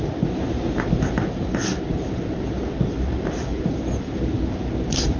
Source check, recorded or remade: recorded